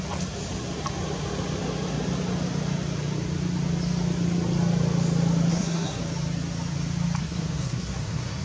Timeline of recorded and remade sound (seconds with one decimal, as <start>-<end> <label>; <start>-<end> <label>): 0.0-5.5 recorded; 5.5-6.0 remade; 6.0-7.2 recorded; 7.2-8.4 remade